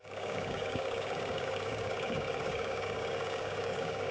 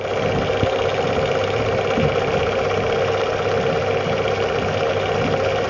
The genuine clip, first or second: second